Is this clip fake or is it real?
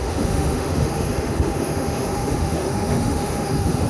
fake